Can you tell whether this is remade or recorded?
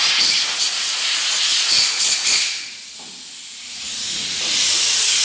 remade